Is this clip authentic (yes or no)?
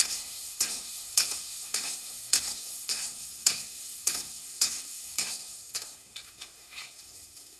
no